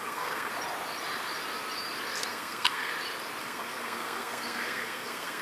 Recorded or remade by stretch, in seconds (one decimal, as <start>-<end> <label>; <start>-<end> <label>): 0.0-0.5 remade; 0.5-2.3 recorded; 2.3-2.9 remade; 2.9-3.4 recorded; 3.4-5.4 remade